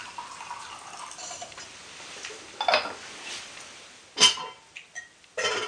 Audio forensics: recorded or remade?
recorded